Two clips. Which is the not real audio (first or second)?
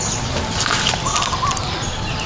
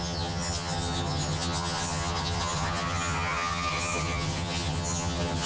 second